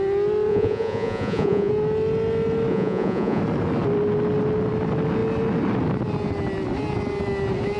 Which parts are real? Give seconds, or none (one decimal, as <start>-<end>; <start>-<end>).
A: 0.0-0.5; 1.7-2.7; 3.4-7.8